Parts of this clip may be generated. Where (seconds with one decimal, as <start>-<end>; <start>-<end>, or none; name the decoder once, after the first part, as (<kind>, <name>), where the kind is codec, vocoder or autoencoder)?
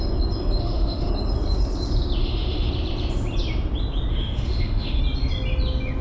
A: 0.6-1.1 (autoencoder, DAC-VAE); 2.2-2.7; 4.1-5.0